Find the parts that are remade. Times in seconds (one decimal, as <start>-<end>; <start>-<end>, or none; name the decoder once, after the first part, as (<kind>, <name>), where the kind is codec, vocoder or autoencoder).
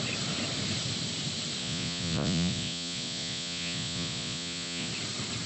1.6-4.9 (vocoder, Vocos)